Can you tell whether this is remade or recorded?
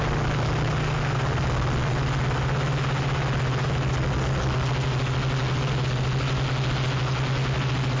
recorded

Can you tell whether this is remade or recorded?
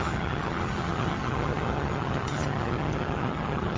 remade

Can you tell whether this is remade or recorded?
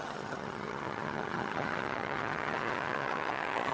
remade